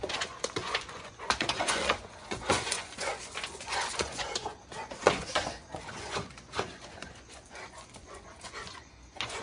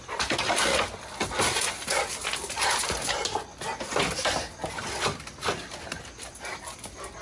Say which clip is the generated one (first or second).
first